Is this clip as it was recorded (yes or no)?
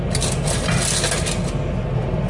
yes